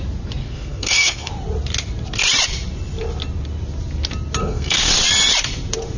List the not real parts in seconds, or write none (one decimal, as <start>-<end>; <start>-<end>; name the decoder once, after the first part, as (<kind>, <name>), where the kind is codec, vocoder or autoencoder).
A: 0.4-1.3 (codec, SNAC); 4.4-4.9